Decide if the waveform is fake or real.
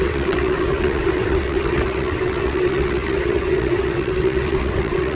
fake